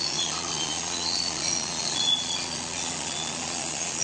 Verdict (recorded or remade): remade